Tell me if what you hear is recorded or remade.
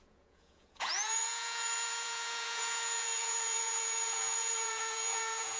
remade